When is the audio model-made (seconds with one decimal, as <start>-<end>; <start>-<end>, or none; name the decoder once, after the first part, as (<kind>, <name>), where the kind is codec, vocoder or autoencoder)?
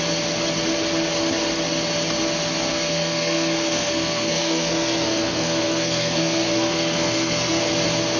2.7-7.6 (codec, SNAC)